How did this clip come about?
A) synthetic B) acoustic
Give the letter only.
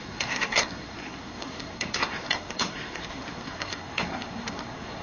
A